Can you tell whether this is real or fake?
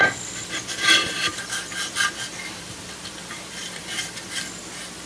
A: fake